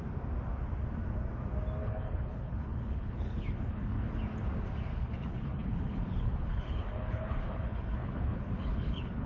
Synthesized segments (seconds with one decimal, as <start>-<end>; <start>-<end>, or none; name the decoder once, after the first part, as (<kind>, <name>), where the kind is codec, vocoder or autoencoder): 1.8-4.1 (codec, HILCodec); 4.9-9.3